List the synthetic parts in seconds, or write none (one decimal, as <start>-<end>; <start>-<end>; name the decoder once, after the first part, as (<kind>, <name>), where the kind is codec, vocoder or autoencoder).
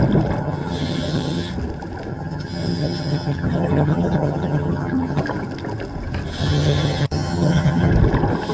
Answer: 0.4-1.5 (vocoder, HiFi-GAN); 2.1-5.2; 6.4-7.9